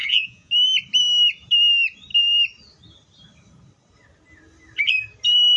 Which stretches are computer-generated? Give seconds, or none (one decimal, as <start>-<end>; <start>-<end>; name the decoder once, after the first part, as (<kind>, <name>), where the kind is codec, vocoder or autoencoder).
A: 0.0-0.5 (vocoder, Vocos)